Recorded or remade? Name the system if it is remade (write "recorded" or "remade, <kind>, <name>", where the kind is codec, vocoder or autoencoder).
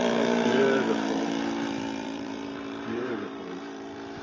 remade, vocoder, BigVGAN v2